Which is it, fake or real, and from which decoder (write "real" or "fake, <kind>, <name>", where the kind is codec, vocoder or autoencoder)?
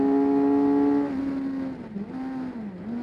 real